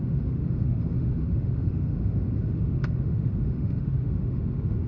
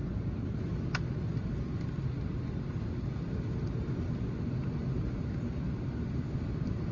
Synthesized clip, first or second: first